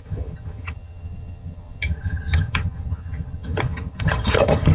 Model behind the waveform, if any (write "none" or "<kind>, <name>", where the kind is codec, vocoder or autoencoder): vocoder, HiFi-GAN